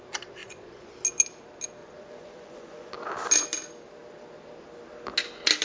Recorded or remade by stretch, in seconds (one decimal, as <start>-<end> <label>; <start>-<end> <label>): 0.0-0.4 recorded; 0.4-0.9 remade; 0.9-1.8 recorded; 1.8-2.9 remade; 2.9-5.6 recorded